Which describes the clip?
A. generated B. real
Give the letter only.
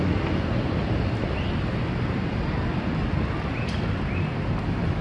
B